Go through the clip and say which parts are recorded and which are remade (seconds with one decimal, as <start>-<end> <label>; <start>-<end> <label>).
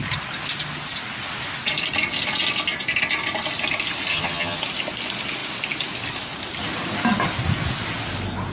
0.0-4.1 recorded; 4.1-4.6 remade; 4.6-8.5 recorded